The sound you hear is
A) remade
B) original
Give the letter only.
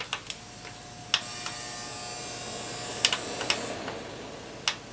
B